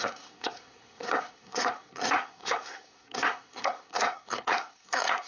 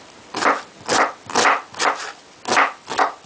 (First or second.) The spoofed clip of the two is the first